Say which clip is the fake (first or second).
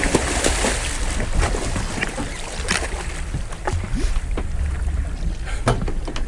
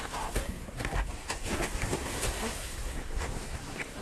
second